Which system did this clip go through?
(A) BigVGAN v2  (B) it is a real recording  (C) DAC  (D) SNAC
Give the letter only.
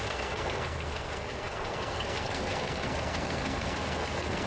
D